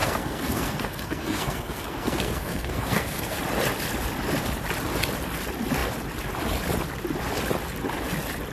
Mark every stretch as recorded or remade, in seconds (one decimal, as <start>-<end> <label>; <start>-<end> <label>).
0.0-3.4 remade; 3.4-8.5 recorded

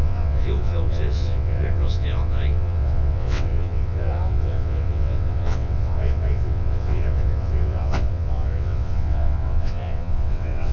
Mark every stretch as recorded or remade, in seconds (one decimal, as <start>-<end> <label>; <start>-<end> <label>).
0.0-10.7 remade

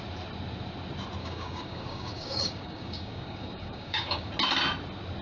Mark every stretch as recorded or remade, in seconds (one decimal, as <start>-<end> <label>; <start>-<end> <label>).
0.0-1.2 recorded; 1.2-4.3 remade; 4.3-5.2 recorded

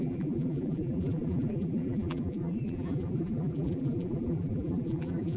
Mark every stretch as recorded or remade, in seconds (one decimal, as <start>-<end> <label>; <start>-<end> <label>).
0.0-5.4 remade

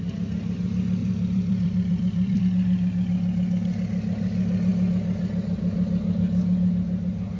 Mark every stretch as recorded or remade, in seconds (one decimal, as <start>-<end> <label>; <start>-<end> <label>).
0.0-1.0 recorded; 1.0-2.4 remade; 2.4-7.4 recorded